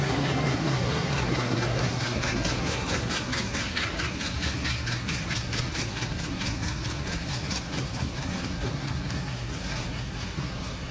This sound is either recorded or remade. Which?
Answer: remade